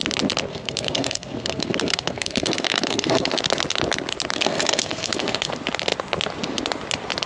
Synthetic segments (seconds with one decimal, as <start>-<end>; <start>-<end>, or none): 0.5-3.4; 4.3-5.5